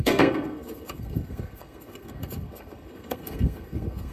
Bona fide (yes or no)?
no